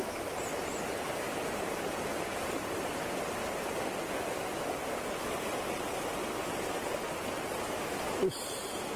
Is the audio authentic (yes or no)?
yes